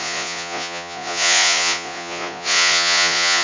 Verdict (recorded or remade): remade